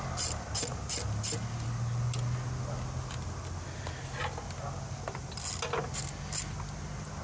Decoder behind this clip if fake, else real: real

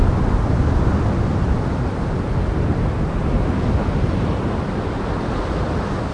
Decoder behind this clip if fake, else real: real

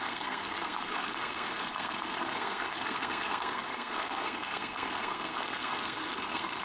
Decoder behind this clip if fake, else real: fake, codec, SNAC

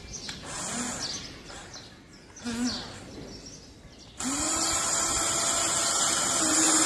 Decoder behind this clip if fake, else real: real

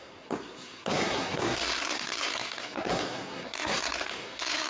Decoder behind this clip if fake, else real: fake, codec, SNAC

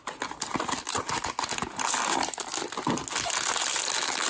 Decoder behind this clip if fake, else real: real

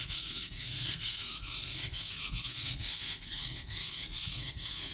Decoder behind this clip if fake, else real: fake, codec, SNAC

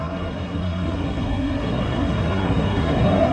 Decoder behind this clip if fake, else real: fake, codec, SNAC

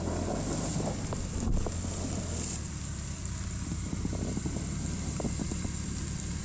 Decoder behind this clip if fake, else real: real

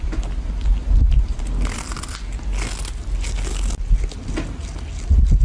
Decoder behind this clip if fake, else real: real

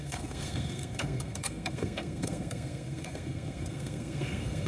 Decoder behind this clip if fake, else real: fake, codec, SNAC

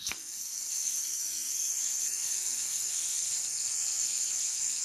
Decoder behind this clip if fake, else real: fake, codec, SNAC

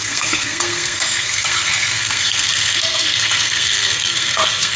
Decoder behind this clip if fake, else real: fake, codec, SNAC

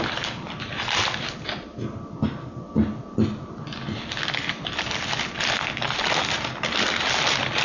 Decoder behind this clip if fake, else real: real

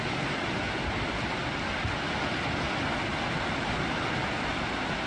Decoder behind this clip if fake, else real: real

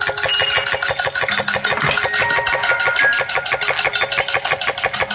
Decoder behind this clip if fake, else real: real